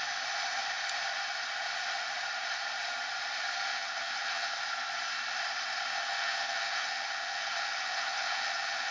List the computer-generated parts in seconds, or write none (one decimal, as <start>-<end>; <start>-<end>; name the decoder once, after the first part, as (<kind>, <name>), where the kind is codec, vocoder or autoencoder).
3.7-4.6 (vocoder, HiFi-GAN); 5.9-8.9